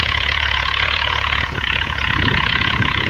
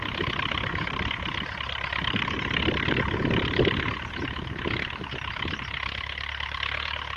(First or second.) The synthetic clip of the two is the first